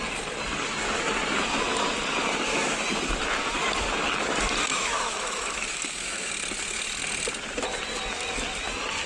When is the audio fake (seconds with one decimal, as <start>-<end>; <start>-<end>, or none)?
4.7-6.3